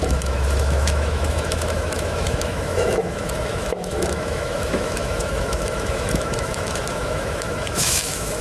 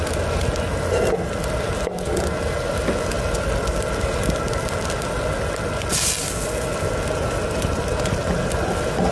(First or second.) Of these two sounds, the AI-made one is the first